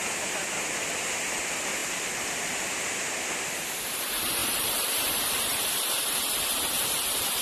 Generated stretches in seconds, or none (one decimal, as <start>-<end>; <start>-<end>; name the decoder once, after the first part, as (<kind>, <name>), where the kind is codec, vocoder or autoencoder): 1.8-2.7 (vocoder, BigVGAN v2); 4.4-5.7